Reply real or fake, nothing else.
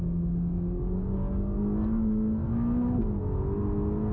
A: real